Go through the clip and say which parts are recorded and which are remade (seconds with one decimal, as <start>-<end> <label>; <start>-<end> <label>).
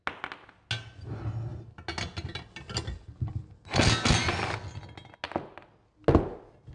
0.0-6.7 recorded